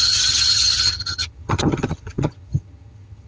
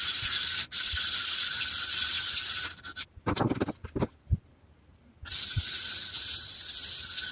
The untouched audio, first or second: second